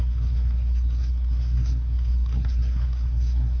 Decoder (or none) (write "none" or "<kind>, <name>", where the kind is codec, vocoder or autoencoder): codec, SNAC